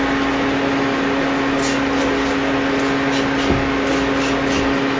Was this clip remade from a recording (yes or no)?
no